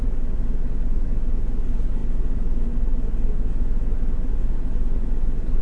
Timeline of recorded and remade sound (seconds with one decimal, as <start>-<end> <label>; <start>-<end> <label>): 0.0-5.6 recorded